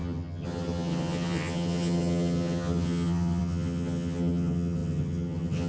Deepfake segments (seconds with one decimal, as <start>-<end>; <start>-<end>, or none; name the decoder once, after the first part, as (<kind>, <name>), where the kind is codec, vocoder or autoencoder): 0.0-5.7 (vocoder, HiFi-GAN)